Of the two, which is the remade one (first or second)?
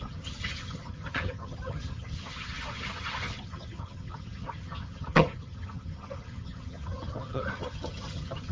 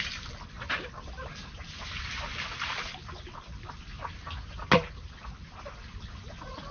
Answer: first